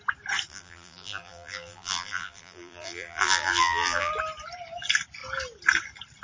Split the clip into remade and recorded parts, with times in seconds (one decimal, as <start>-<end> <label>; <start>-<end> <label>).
0.0-0.5 recorded; 0.5-4.1 remade; 4.1-6.2 recorded